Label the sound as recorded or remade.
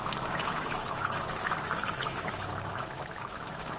remade